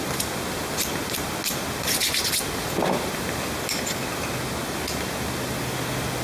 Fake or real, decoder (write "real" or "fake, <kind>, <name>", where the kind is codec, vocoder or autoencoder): real